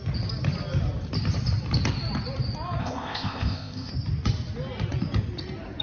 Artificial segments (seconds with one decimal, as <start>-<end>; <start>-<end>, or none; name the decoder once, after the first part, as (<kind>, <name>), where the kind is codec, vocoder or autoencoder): 2.8-3.9 (codec, ZipCodec)